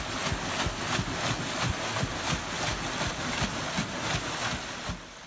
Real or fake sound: real